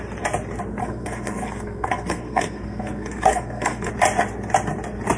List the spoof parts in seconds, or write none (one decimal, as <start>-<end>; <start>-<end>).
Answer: 0.8-3.9